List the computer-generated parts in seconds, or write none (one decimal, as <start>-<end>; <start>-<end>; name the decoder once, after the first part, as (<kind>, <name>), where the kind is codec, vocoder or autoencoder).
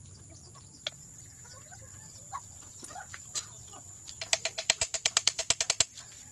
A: 1.9-5.7 (vocoder, BigVGAN v2)